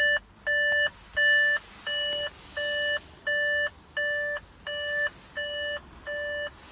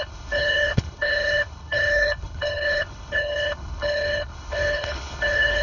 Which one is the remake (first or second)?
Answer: second